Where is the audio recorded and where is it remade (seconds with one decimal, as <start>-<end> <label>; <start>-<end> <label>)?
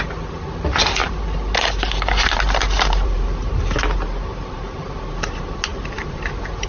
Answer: 0.0-1.0 recorded; 1.0-5.0 remade; 5.0-5.7 recorded; 5.7-6.3 remade; 6.3-6.7 recorded